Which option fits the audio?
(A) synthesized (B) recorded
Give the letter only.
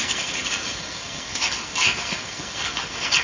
A